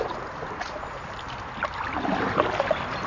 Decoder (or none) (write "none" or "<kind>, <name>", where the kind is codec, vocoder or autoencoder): none